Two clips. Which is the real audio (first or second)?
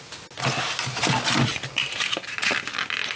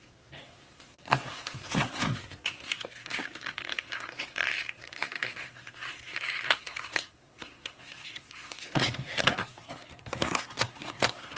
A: first